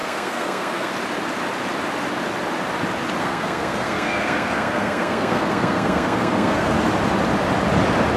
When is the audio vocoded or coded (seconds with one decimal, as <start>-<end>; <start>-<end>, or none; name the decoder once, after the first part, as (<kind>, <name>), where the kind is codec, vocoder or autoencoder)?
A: 0.0-0.9 (codec, SNAC); 3.2-6.7